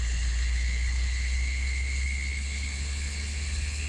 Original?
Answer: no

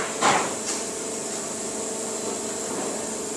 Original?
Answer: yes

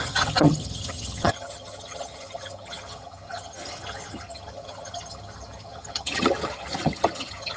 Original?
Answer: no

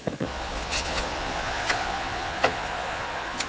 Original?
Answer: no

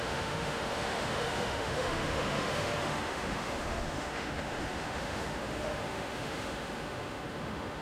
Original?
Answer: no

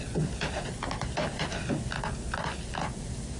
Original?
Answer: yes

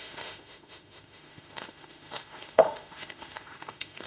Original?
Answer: no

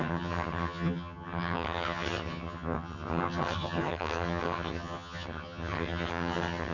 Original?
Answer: no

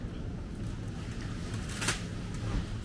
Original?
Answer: yes